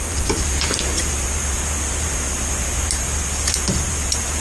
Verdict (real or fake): real